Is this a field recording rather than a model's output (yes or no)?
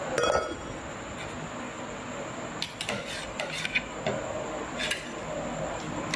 yes